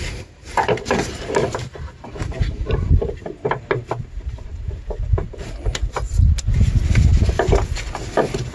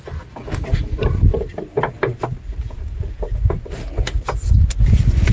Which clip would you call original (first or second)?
second